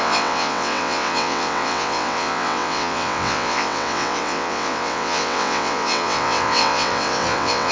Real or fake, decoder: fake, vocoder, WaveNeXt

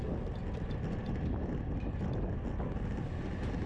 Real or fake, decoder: real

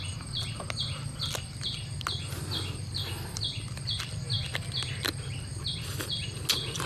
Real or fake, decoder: real